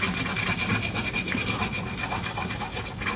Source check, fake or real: real